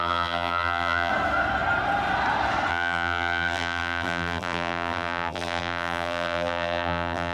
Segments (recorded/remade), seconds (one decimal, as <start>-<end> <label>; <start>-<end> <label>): 0.0-1.1 remade; 1.1-2.7 recorded; 2.7-7.3 remade